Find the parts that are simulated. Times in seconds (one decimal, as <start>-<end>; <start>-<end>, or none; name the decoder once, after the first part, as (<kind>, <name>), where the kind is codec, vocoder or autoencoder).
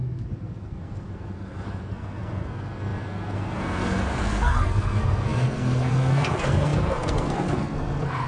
0.0-8.3 (codec, SNAC)